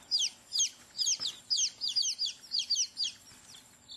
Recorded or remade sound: recorded